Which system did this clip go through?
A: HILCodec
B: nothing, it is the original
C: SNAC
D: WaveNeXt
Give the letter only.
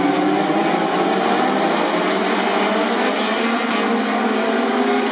B